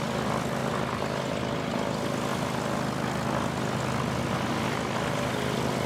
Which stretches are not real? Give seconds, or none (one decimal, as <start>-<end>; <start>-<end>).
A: 0.6-1.2